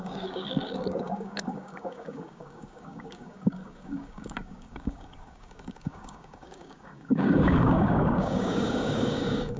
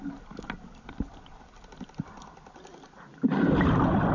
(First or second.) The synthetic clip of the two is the first